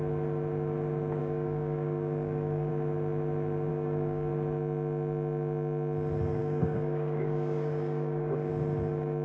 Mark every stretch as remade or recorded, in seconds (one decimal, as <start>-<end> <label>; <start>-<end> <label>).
0.0-1.2 recorded; 1.2-2.7 remade; 2.7-3.7 recorded; 3.7-4.3 remade; 4.3-6.4 recorded; 6.4-8.5 remade; 8.5-9.2 recorded